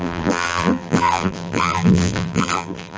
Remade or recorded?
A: remade